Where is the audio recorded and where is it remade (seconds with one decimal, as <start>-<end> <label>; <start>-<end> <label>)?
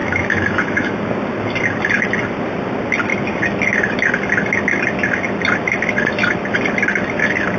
0.0-1.0 remade; 1.0-7.6 recorded